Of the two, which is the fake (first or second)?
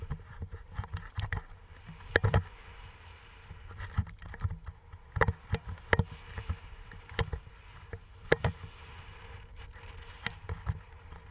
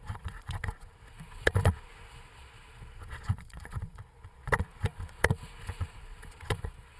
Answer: second